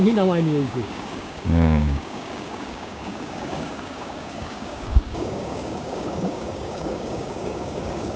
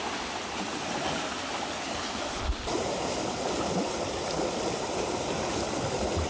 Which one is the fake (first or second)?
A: first